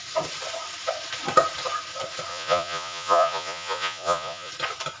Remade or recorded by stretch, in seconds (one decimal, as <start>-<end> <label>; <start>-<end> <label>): 0.0-2.3 recorded; 2.3-4.5 remade; 4.5-5.0 recorded